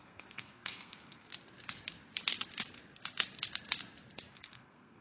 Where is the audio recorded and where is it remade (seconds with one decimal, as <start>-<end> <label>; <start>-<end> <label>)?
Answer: 0.0-1.3 remade; 1.3-4.3 recorded; 4.3-5.0 remade